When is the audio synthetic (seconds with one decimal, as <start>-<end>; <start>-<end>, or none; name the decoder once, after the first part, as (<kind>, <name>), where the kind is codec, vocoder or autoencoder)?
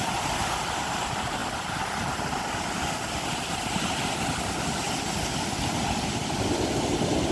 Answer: none